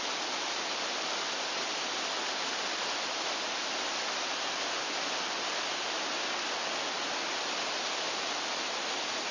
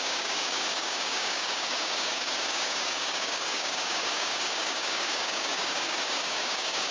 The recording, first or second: first